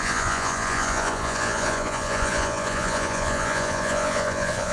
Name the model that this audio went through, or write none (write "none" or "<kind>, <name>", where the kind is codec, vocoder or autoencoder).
vocoder, Vocos